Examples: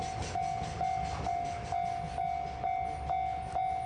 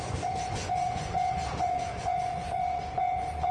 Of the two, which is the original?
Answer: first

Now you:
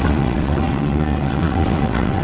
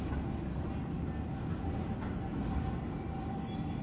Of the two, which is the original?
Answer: second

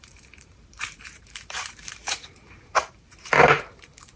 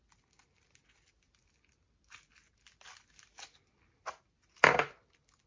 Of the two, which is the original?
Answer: second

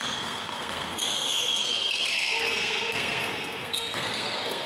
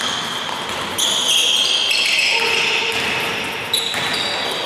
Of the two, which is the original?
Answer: second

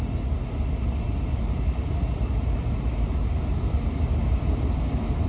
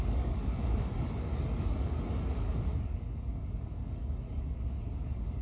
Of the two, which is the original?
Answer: first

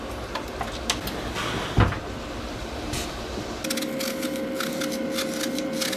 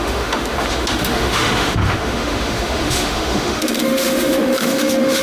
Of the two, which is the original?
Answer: first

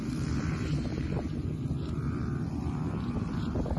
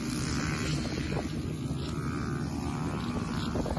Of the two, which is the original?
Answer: second